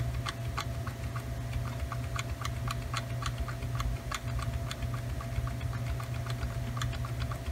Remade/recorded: recorded